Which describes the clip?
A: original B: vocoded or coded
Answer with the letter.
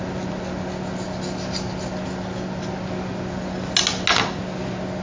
A